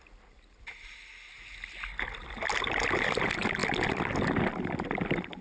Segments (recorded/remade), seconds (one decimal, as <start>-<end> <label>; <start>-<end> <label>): 0.0-5.4 recorded